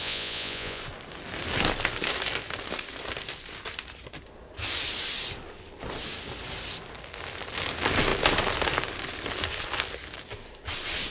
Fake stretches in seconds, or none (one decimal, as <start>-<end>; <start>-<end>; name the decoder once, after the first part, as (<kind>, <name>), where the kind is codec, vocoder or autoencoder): 0.0-0.8 (vocoder, Vocos)